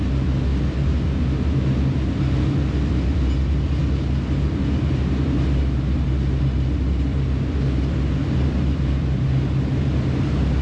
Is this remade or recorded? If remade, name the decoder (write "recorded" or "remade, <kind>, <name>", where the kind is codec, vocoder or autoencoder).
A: recorded